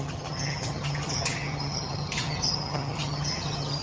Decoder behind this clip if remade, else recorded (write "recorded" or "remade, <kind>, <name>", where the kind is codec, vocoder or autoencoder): remade, vocoder, HiFi-GAN